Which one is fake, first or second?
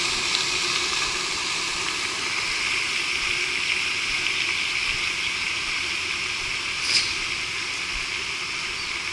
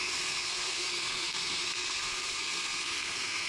second